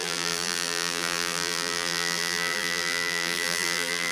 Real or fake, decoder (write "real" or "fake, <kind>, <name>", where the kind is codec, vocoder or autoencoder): fake, vocoder, BigVGAN v2